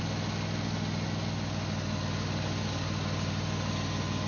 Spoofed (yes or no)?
no